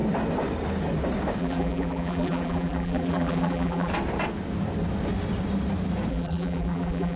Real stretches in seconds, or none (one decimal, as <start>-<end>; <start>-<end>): 0.0-1.4; 3.9-6.1